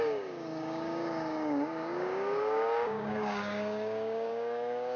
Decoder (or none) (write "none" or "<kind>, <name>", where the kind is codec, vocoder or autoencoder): codec, DAC